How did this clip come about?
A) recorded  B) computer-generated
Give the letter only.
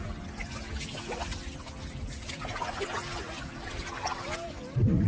A